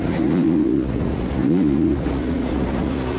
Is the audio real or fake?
fake